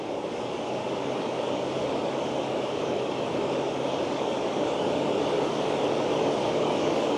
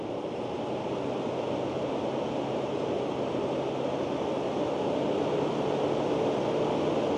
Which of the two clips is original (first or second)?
second